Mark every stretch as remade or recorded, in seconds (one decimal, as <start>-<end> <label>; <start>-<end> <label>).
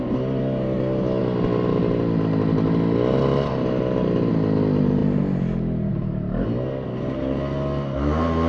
0.0-8.5 recorded